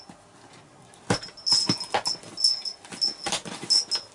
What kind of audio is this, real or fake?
real